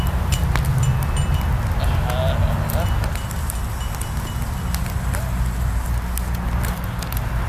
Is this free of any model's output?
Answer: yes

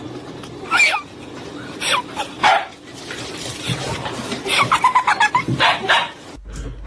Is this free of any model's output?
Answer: yes